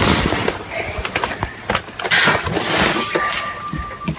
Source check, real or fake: fake